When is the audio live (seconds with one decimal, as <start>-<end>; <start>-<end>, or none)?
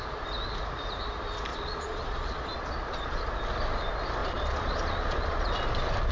0.0-1.5; 3.3-4.2; 5.5-6.1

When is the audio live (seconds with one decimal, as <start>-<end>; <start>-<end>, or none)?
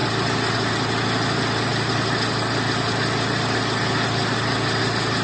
0.0-5.2